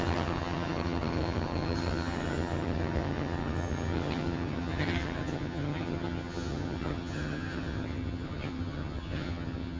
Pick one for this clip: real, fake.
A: fake